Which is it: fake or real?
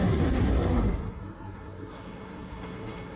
fake